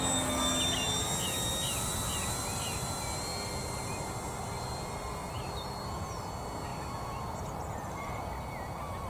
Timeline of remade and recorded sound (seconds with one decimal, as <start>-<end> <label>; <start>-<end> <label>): 0.0-9.1 recorded